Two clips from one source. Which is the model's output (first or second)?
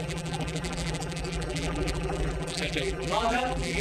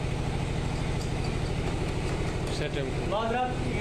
first